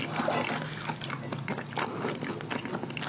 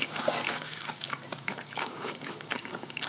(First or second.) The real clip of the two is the first